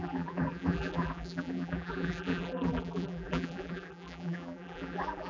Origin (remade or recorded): remade